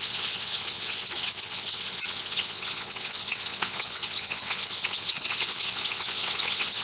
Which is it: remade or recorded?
remade